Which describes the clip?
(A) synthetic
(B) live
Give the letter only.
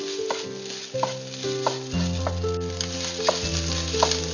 B